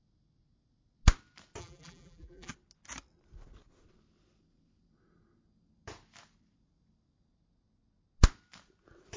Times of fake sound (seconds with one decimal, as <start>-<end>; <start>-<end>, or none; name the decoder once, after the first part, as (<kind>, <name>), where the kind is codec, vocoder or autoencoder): 1.6-2.5 (vocoder, BigVGAN v2)